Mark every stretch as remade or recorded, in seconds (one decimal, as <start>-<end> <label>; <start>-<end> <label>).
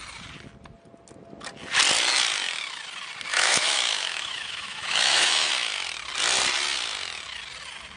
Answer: 0.0-3.3 recorded; 3.3-5.5 remade; 5.5-8.0 recorded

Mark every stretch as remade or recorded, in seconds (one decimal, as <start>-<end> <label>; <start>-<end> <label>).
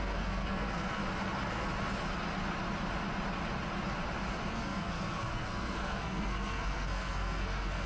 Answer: 0.0-1.0 remade; 1.0-4.5 recorded; 4.5-7.9 remade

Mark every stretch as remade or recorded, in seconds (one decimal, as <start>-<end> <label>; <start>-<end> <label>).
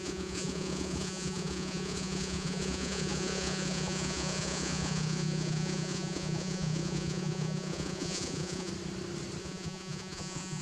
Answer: 0.0-8.7 remade; 8.7-9.4 recorded; 9.4-10.6 remade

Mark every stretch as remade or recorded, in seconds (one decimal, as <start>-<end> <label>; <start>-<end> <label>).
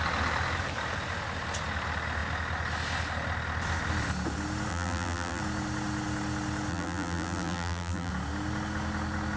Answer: 0.0-4.7 recorded; 4.7-5.4 remade; 5.4-6.7 recorded; 6.7-8.1 remade; 8.1-9.4 recorded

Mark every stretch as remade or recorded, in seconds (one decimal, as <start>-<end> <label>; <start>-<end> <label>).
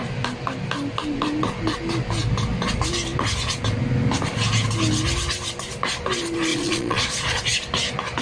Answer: 0.0-6.5 recorded; 6.5-7.4 remade; 7.4-8.2 recorded